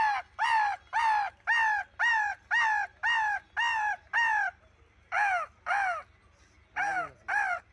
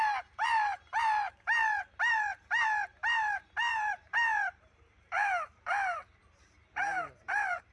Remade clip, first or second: second